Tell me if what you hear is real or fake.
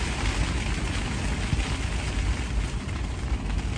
real